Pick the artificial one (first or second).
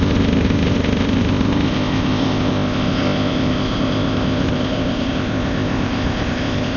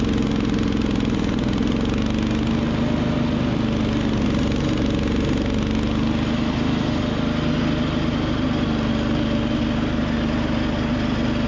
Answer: first